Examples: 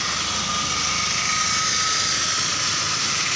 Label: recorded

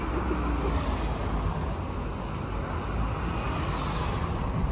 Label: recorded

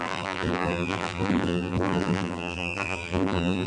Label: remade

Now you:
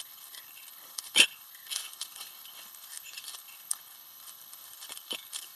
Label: remade